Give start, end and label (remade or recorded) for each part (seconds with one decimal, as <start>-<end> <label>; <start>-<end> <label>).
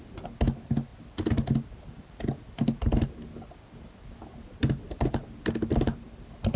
0.0-6.6 recorded